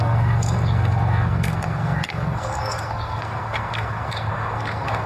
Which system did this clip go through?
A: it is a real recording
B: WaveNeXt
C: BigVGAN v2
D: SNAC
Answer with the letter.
D